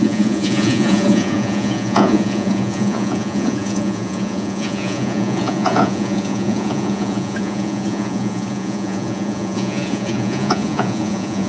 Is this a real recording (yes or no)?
no